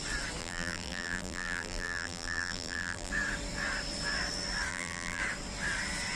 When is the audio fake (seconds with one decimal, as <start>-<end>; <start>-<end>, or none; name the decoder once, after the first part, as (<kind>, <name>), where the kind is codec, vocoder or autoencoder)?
0.4-3.1 (vocoder, BigVGAN v2); 4.7-5.2